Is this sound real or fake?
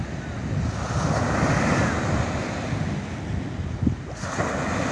real